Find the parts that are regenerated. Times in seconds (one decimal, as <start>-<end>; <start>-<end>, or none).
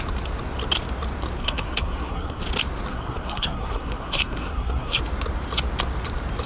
1.4-2.4; 2.9-5.0